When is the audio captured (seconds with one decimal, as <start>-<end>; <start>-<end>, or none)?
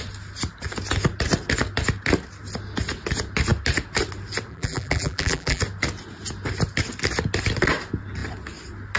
0.0-4.5; 5.6-9.0